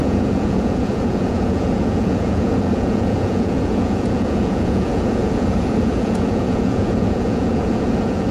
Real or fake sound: fake